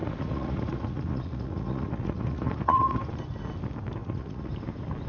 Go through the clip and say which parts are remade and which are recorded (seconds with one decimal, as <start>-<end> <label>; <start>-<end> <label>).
0.0-3.1 remade; 3.1-4.0 recorded; 4.0-4.5 remade; 4.5-5.1 recorded